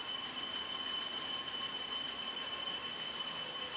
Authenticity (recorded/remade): remade